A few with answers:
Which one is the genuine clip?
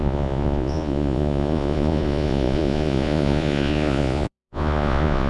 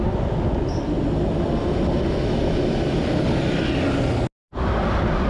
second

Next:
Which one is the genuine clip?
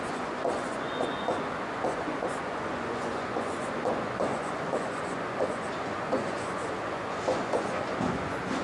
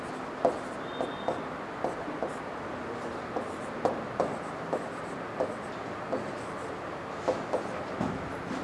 second